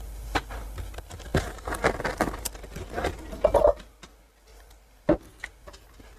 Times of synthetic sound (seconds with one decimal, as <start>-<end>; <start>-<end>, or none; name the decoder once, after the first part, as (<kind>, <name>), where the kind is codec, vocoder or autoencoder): none